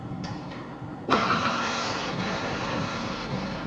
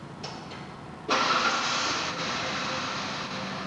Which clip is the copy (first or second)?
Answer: first